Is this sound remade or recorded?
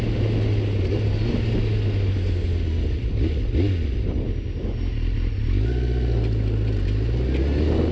recorded